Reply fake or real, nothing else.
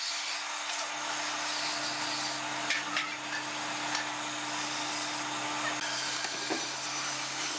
real